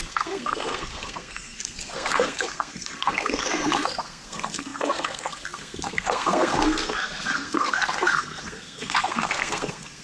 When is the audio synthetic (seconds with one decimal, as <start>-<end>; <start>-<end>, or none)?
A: 0.0-10.0